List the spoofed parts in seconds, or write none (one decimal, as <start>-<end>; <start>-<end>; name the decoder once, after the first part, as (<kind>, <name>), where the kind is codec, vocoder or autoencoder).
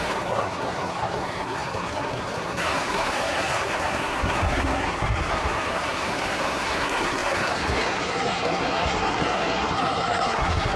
0.0-10.8 (codec, SNAC)